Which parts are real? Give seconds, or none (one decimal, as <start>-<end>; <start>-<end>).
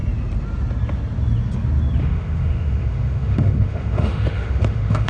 0.0-2.0